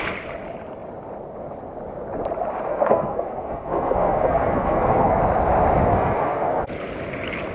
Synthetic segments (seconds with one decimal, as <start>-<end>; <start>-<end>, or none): 2.7-5.2; 5.9-6.6